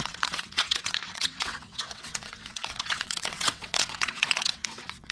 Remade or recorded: remade